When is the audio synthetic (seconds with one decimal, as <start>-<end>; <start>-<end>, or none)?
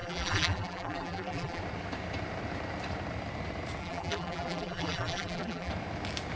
0.0-1.6; 3.8-5.7